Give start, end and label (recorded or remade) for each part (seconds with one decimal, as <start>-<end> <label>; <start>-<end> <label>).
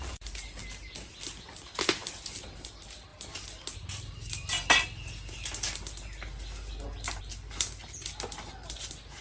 0.0-9.2 recorded